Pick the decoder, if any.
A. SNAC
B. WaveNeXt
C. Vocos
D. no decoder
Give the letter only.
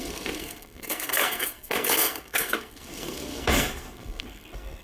A